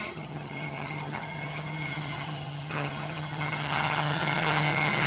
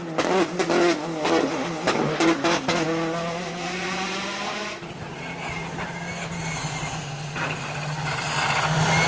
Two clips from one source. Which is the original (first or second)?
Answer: second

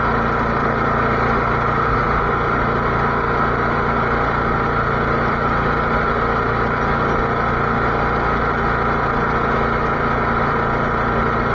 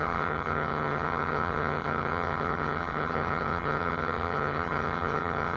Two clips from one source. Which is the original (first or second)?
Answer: first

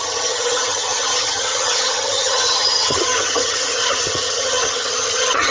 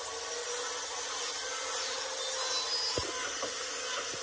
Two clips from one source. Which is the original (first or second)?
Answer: second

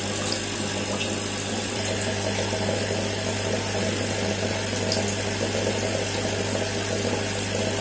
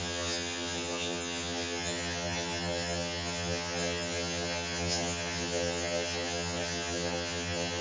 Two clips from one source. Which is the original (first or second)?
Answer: first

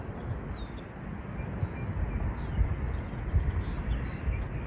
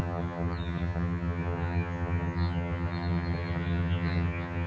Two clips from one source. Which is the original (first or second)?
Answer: first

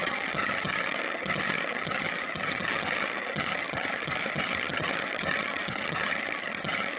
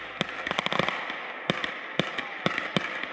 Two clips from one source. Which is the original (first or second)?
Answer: second